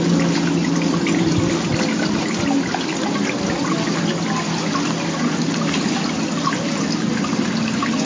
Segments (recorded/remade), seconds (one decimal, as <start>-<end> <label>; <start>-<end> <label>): 0.0-8.1 recorded